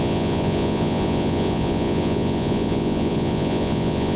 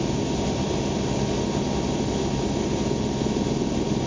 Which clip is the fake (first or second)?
first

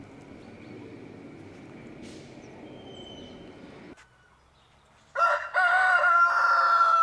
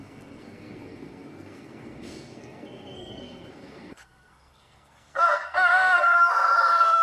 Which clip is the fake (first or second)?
second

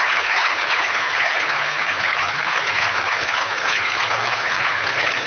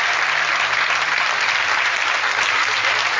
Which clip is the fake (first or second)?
first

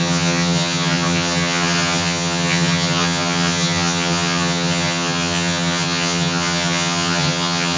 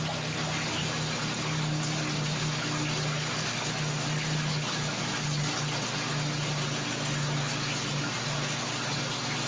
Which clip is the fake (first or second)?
first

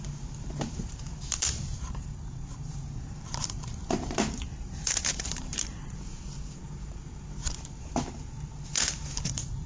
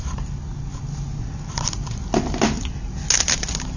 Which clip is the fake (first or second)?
first